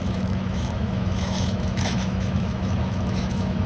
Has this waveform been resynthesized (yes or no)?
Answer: yes